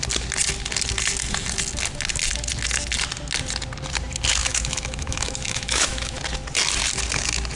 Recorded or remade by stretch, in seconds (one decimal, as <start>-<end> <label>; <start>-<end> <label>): 0.0-4.4 recorded; 4.4-6.2 remade; 6.2-7.6 recorded